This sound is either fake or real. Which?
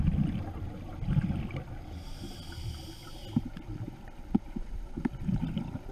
real